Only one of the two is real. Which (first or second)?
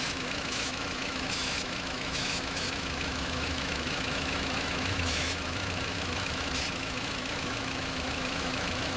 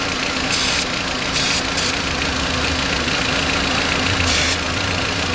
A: second